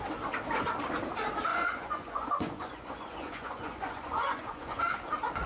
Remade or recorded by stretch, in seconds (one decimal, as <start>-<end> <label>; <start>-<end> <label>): 0.0-1.5 recorded; 1.5-4.8 remade; 4.8-5.5 recorded